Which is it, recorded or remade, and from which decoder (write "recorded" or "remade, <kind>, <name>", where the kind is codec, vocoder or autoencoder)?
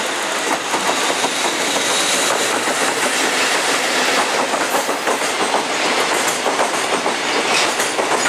recorded